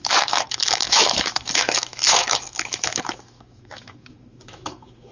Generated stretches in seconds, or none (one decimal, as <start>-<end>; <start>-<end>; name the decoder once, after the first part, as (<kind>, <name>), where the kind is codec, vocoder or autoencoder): 0.0-5.1 (autoencoder, DAC-VAE)